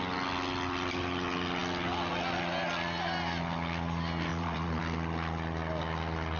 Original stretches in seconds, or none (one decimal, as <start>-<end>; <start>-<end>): 0.0-4.3; 4.8-6.4